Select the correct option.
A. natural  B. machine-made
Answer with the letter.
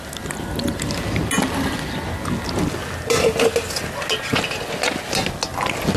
A